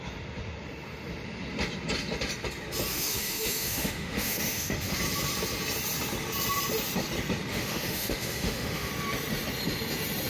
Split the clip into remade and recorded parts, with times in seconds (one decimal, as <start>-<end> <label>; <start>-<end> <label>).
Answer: 0.0-2.9 recorded; 2.9-5.0 remade; 5.0-7.5 recorded; 7.5-8.9 remade; 8.9-10.3 recorded